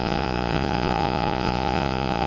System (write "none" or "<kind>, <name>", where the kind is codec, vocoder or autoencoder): vocoder, Vocos